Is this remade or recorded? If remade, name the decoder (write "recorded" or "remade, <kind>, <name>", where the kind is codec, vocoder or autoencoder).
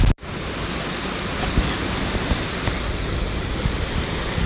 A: recorded